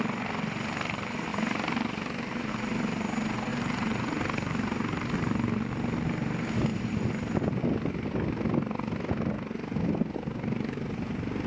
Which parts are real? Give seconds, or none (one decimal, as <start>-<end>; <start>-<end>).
0.0-1.3; 2.5-3.5; 5.7-11.5